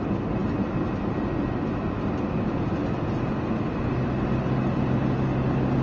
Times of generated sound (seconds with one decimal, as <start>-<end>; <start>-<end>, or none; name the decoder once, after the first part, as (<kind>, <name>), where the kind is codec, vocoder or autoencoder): none